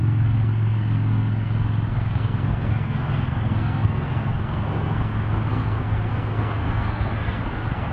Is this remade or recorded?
remade